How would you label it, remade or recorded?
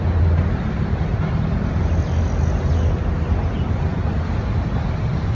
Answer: recorded